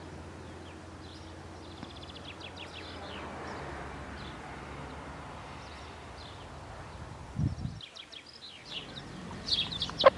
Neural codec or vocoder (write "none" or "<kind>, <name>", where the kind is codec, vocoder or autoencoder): none